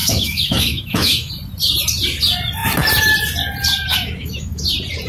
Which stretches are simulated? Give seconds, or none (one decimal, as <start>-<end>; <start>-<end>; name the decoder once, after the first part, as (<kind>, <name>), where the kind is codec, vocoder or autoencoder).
0.0-1.3 (autoencoder, DAC-VAE); 3.9-4.5